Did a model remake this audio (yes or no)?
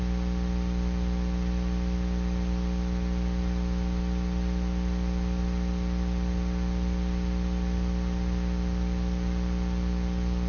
no